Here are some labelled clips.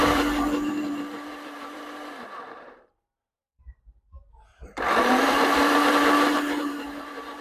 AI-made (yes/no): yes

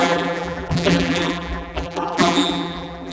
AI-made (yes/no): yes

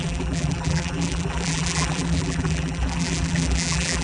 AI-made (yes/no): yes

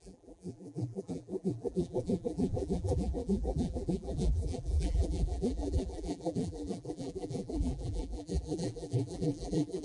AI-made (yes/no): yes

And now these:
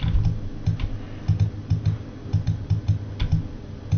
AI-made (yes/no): no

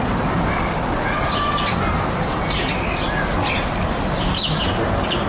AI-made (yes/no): no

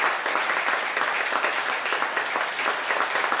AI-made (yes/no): no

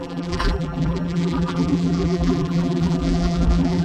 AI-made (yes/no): yes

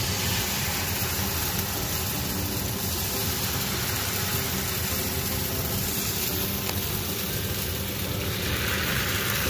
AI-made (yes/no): no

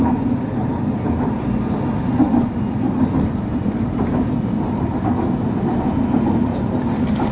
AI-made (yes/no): no